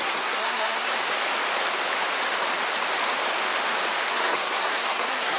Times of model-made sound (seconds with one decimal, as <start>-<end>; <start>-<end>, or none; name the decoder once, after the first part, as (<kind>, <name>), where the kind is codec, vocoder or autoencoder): 0.0-0.9 (codec, SNAC); 4.1-5.4